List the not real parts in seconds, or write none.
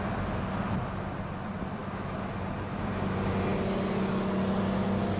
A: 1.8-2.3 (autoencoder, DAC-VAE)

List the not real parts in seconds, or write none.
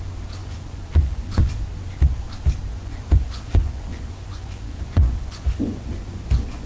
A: 0.4-1.4 (vocoder, Vocos); 2.7-6.7